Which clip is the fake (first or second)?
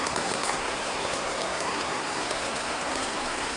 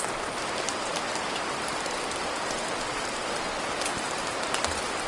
first